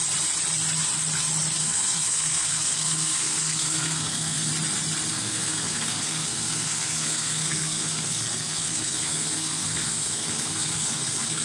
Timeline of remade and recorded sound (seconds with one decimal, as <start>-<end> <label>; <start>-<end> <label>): 0.0-1.6 recorded; 1.6-4.5 remade; 4.5-5.1 recorded; 5.1-11.4 remade